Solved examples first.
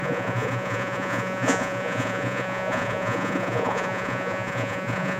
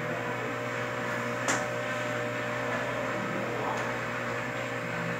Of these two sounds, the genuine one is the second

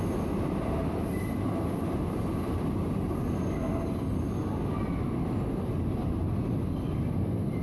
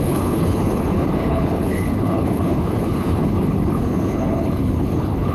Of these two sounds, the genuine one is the first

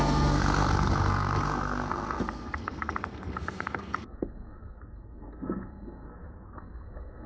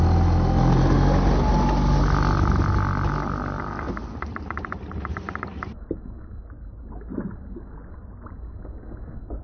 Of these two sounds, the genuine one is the second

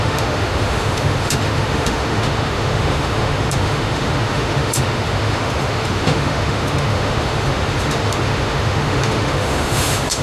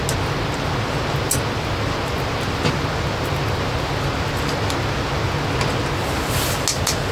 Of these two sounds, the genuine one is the second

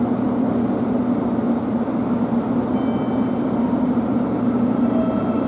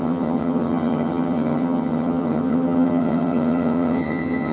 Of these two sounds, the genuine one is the first